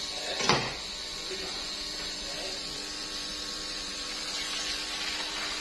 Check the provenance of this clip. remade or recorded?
remade